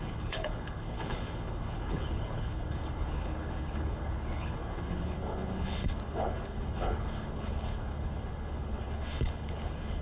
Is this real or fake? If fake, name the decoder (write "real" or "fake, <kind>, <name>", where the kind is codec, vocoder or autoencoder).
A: fake, codec, HILCodec